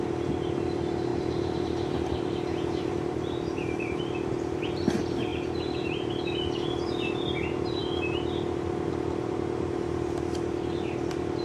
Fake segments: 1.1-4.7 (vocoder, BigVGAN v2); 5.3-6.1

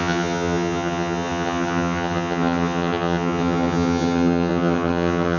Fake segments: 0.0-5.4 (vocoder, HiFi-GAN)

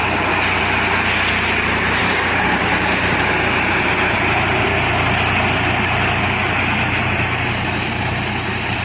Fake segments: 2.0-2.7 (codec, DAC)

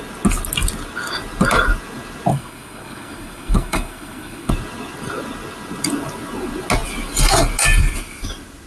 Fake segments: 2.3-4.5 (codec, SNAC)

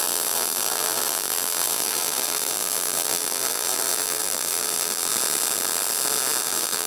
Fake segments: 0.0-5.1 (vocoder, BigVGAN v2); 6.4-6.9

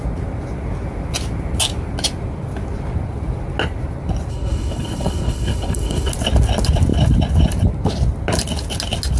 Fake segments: 4.3-6.1 (codec, HILCodec)